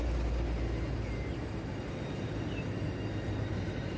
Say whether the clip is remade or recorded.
recorded